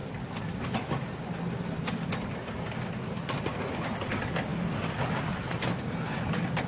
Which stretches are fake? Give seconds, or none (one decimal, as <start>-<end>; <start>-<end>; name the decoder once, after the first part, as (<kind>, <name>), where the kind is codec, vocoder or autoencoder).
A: none